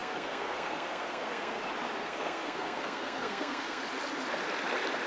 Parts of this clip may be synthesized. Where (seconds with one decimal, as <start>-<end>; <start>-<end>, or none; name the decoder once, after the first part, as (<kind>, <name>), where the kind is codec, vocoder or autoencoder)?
0.0-1.6 (codec, SNAC); 2.0-3.8